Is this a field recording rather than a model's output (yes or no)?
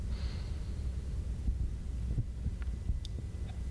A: yes